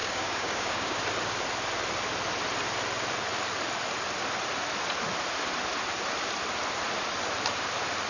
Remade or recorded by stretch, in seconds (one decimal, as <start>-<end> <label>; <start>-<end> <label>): 0.0-1.0 remade; 1.0-8.1 recorded